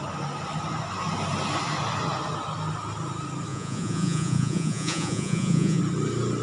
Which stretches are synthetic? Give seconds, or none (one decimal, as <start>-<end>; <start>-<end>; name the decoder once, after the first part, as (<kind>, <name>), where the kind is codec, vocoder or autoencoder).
3.5-5.8 (vocoder, Vocos)